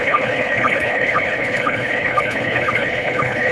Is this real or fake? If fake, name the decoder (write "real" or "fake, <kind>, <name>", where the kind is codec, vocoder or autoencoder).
fake, codec, HILCodec